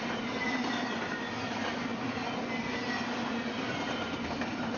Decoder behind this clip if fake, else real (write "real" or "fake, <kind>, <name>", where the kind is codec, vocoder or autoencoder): fake, vocoder, BigVGAN v2